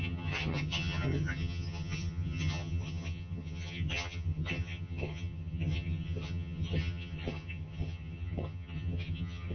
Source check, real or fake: fake